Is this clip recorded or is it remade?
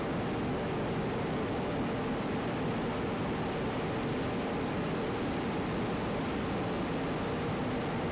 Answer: recorded